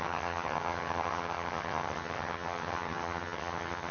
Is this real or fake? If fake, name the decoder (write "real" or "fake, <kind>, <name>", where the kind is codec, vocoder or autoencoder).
fake, vocoder, HiFi-GAN